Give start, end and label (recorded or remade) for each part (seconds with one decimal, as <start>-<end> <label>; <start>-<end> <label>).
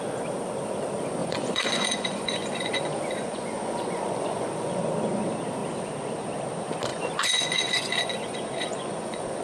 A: 0.0-1.2 recorded; 1.2-4.8 remade; 4.8-6.9 recorded; 6.9-9.4 remade